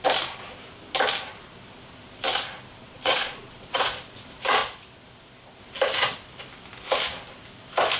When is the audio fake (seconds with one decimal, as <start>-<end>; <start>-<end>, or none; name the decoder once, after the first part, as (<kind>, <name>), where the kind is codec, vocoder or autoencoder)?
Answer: 2.8-3.9 (vocoder, Vocos)